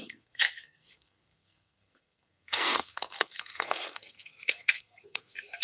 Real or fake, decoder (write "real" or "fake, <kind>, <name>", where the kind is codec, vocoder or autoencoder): fake, codec, SNAC